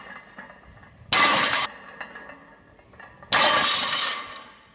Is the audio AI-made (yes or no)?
no